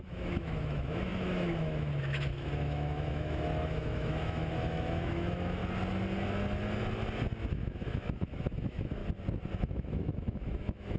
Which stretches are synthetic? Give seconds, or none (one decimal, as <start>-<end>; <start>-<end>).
0.0-5.6; 7.5-9.0; 9.6-11.0

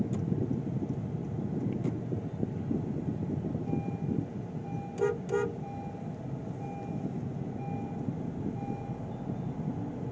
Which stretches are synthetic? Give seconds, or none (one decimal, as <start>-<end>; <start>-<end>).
none

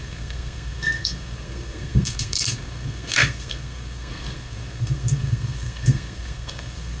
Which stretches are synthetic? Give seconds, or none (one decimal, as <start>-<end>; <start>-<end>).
0.0-7.0

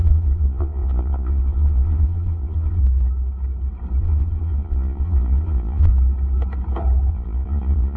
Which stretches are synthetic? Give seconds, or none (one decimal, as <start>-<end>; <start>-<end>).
0.0-2.8; 4.0-5.9; 7.1-8.0